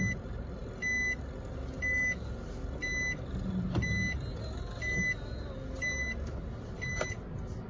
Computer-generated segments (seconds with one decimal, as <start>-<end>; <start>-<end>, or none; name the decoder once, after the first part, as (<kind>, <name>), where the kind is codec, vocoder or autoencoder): none